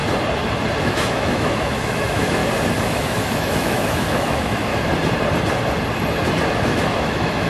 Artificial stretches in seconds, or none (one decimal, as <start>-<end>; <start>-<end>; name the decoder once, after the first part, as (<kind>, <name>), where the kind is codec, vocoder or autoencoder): 0.8-2.4 (autoencoder, DAC-VAE); 2.9-4.7; 6.6-7.5